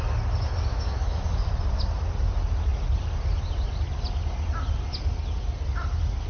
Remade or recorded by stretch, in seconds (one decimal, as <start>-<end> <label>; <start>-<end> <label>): 0.0-0.7 recorded; 0.7-1.5 remade; 1.5-6.3 recorded